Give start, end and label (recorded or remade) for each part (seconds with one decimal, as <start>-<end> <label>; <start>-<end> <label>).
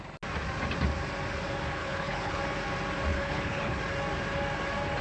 0.0-1.8 recorded; 1.8-2.4 remade; 2.4-3.1 recorded; 3.1-3.8 remade; 3.8-5.0 recorded